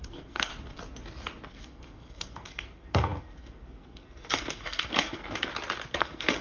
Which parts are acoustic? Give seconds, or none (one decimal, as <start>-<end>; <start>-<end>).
0.5-1.5; 5.5-6.0